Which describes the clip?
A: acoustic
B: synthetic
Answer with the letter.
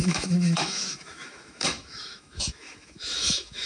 B